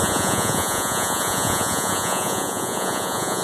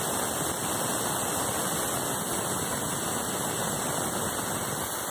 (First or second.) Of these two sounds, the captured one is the second